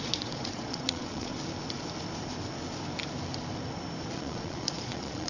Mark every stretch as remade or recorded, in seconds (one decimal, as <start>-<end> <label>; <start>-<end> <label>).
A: 0.0-1.3 remade; 1.3-4.1 recorded; 4.1-5.3 remade